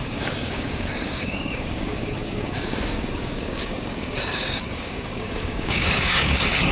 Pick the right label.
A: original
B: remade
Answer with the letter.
B